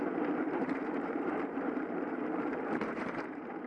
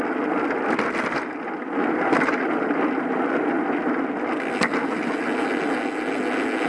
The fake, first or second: first